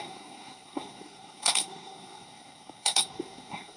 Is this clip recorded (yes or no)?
no